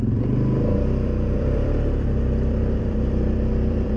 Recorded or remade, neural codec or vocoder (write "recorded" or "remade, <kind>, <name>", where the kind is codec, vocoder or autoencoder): remade, vocoder, BigVGAN v2